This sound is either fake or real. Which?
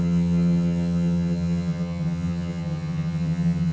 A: fake